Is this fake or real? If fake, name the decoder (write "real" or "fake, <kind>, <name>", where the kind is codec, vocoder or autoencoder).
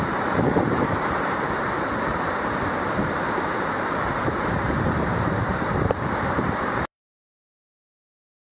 fake, vocoder, BigVGAN v2